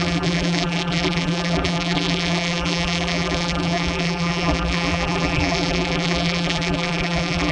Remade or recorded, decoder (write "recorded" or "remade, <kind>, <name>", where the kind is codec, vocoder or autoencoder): remade, vocoder, BigVGAN v2